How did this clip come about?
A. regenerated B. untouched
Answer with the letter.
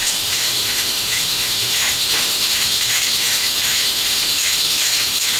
A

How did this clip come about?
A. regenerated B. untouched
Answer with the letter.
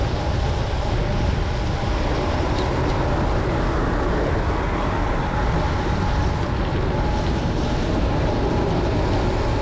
B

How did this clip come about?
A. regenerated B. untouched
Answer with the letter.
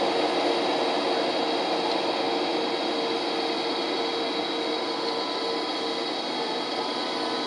B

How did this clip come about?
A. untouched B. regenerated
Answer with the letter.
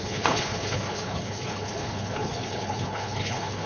B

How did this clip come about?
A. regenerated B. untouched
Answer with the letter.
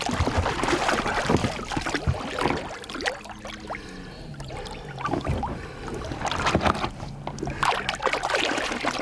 B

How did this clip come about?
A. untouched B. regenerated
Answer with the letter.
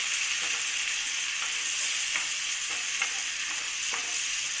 A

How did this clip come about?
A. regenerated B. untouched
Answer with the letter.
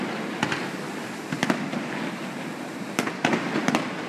B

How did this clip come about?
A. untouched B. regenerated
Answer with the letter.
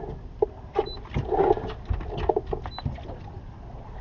A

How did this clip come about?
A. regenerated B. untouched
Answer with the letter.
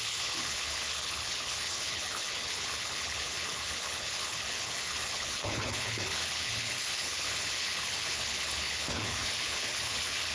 A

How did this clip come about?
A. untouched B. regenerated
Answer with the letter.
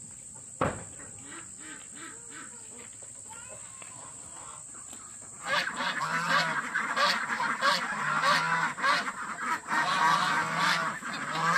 A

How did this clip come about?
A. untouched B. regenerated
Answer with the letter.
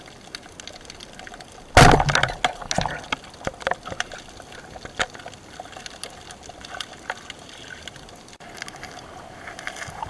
A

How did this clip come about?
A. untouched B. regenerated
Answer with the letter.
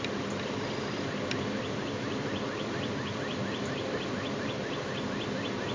A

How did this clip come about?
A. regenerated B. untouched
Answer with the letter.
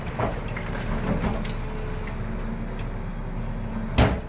B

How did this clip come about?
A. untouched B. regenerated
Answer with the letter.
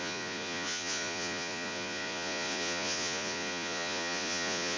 B